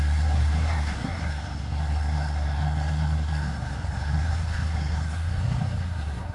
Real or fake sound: fake